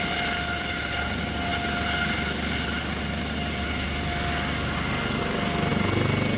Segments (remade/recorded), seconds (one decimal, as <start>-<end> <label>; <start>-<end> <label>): 0.0-6.4 recorded